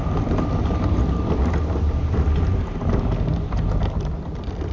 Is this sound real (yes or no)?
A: yes